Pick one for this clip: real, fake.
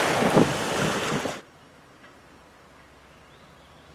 real